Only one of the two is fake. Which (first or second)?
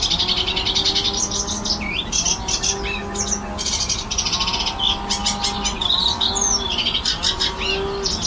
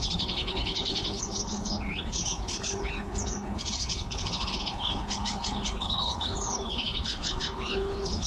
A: second